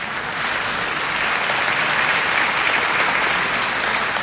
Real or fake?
real